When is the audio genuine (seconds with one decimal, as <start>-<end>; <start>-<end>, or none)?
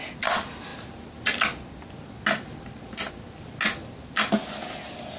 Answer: 0.0-5.2